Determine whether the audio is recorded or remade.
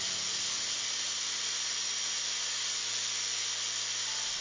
recorded